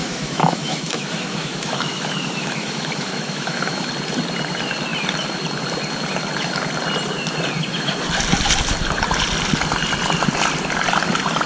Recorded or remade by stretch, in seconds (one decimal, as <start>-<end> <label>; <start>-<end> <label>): 0.0-3.9 remade; 3.9-11.5 recorded